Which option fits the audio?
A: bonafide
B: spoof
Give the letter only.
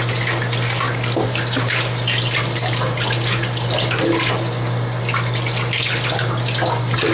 A